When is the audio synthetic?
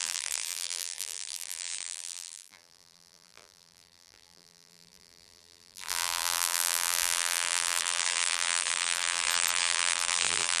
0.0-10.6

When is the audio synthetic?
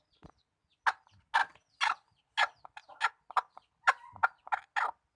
none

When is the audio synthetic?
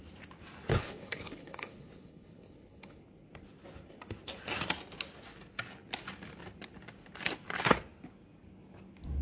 0.7-3.0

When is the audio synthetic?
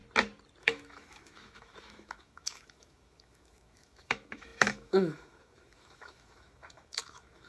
0.6-7.5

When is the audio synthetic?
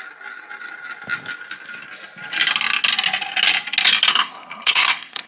4.1-5.3